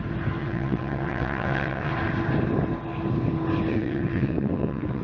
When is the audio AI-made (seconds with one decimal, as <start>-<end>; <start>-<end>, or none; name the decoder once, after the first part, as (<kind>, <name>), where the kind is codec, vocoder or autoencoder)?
0.4-1.9 (vocoder, WaveNeXt); 3.7-5.0